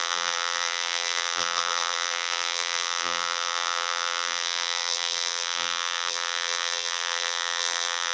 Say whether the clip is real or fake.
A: fake